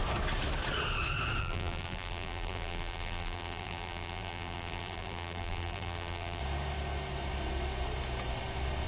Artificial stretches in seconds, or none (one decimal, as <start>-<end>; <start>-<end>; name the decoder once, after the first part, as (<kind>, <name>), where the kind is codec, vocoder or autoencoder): 1.4-6.4 (vocoder, BigVGAN v2)